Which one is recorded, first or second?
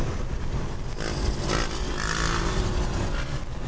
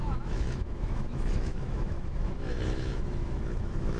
first